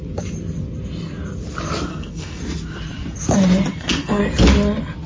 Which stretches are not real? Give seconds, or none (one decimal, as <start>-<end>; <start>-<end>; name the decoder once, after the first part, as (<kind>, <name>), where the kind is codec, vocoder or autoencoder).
1.9-2.4 (codec, SNAC); 3.7-4.2